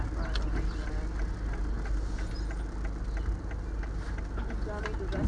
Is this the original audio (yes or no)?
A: yes